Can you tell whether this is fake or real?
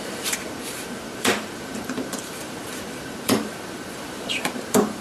fake